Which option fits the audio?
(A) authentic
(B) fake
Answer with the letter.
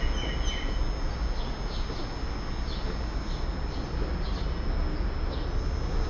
A